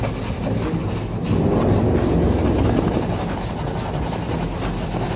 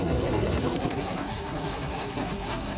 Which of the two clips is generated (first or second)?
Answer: second